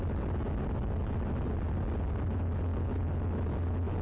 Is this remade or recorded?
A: recorded